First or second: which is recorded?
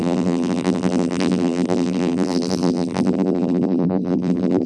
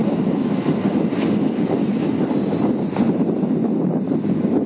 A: second